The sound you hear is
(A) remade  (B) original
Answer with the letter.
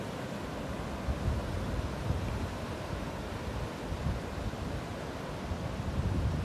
B